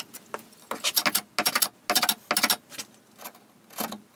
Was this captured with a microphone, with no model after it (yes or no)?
yes